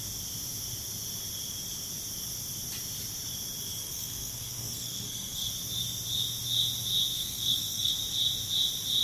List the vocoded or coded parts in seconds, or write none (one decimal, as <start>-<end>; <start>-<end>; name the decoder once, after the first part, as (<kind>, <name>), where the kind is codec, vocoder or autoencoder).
3.8-5.5 (codec, SNAC); 7.2-7.9